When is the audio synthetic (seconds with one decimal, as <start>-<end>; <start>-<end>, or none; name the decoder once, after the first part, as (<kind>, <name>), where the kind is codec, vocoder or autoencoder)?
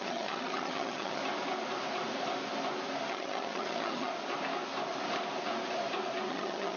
0.0-1.2 (vocoder, HiFi-GAN); 3.1-4.1; 6.3-6.8